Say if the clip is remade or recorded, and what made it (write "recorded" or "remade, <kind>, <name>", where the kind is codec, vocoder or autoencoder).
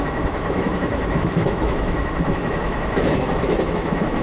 remade, autoencoder, DAC-VAE